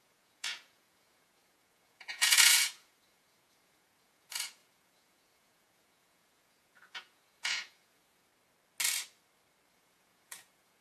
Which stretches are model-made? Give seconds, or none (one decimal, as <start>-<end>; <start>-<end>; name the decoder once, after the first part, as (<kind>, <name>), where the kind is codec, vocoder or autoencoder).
0.0-8.3 (vocoder, Vocos); 9.7-10.8